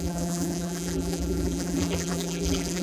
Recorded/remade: remade